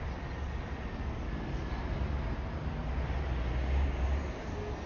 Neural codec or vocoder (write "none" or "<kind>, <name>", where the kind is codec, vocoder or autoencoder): none